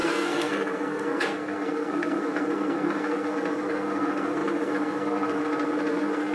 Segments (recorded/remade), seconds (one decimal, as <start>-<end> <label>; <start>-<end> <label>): 0.0-6.3 remade